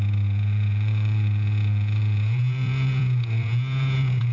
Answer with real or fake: fake